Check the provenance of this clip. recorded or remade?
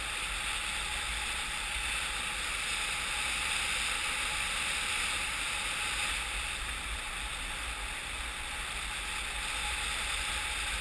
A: recorded